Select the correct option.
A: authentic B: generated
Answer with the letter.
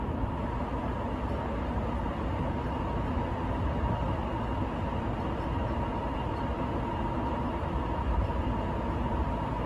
A